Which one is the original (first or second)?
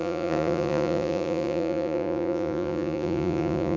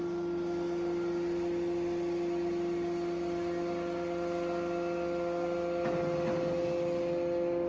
second